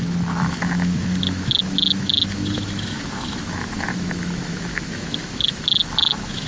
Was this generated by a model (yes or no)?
yes